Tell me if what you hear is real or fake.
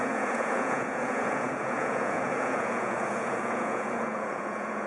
fake